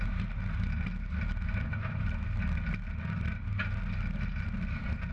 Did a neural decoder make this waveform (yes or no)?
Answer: no